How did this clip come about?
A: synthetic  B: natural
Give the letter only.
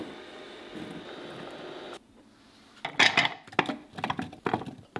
B